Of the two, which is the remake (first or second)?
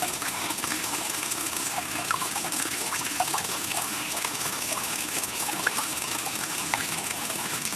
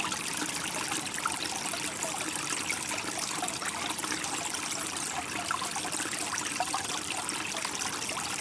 first